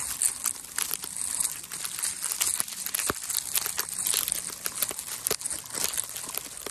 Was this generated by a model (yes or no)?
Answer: no